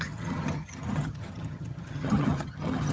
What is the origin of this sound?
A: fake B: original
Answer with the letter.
A